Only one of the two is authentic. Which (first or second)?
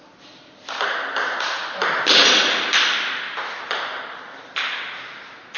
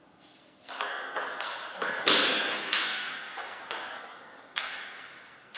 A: first